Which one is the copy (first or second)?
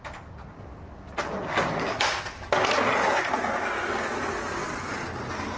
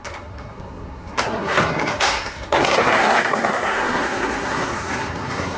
second